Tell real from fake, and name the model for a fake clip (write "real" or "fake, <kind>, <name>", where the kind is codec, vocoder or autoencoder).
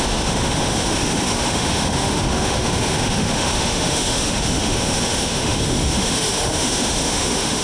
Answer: fake, autoencoder, DAC-VAE